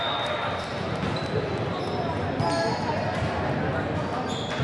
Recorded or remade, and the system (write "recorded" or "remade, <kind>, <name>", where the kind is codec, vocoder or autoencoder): recorded